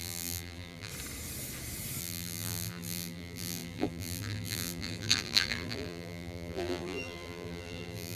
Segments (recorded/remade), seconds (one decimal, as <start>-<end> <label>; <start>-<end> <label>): 0.0-0.9 remade; 0.9-2.0 recorded; 2.0-8.2 remade